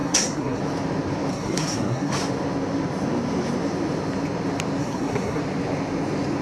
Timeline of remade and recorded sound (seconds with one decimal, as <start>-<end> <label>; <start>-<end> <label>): 0.0-0.6 remade; 0.6-1.3 recorded; 1.3-2.1 remade; 2.1-4.8 recorded; 4.8-5.4 remade; 5.4-6.4 recorded